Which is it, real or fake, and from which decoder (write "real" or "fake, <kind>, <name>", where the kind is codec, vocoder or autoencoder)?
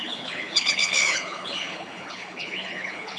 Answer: fake, codec, HILCodec